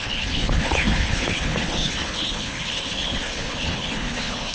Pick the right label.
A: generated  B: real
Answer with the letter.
A